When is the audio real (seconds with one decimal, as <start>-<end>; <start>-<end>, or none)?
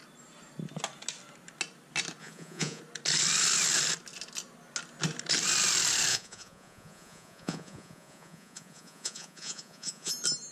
0.0-2.2; 2.8-6.1; 10.1-10.5